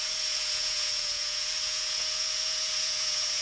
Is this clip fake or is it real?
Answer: fake